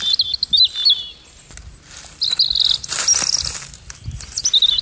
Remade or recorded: recorded